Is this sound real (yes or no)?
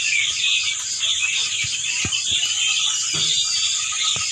yes